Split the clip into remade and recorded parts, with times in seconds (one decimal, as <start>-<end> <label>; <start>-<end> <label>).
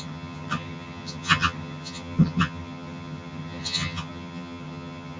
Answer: 0.0-5.2 remade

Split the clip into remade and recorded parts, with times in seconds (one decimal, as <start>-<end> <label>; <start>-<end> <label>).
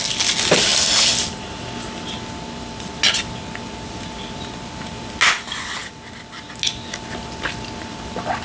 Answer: 0.0-8.4 recorded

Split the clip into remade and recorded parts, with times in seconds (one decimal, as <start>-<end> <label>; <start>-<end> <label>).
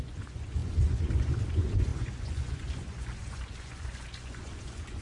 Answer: 0.0-5.0 remade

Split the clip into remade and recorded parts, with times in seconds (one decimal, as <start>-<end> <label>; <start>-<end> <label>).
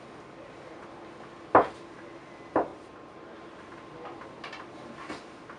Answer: 0.0-2.7 recorded; 2.7-3.6 remade; 3.6-5.6 recorded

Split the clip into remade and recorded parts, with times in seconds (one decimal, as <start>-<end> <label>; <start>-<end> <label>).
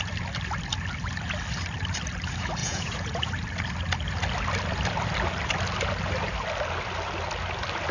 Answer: 0.0-2.6 recorded; 2.6-3.3 remade; 3.3-7.9 recorded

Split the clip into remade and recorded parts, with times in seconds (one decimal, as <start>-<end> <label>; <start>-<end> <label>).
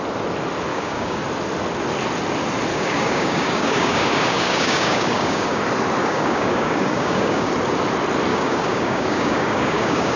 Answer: 0.0-0.7 recorded; 0.7-1.2 remade; 1.2-2.7 recorded; 2.7-5.6 remade; 5.6-6.0 recorded; 6.0-7.5 remade; 7.5-8.3 recorded; 8.3-10.2 remade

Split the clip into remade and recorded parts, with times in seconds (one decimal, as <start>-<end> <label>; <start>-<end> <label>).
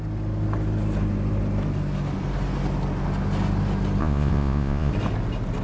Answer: 0.0-4.0 recorded; 4.0-4.9 remade; 4.9-5.6 recorded